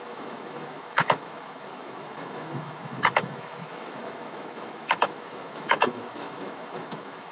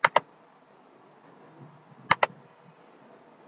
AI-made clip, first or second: first